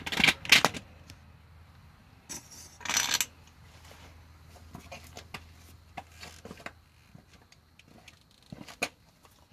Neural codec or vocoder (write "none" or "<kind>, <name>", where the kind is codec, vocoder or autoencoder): none